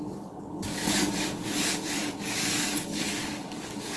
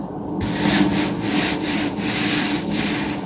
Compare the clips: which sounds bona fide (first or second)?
second